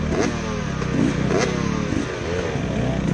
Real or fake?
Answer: real